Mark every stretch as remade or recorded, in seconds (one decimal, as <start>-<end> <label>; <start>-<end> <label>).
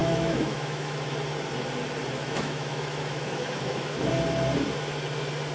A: 0.0-1.1 remade; 1.1-2.2 recorded; 2.2-4.1 remade; 4.1-5.5 recorded